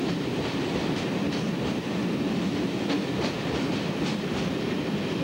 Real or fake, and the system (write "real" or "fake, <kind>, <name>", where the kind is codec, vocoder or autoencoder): real